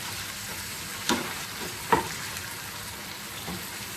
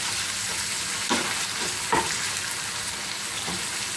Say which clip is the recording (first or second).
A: second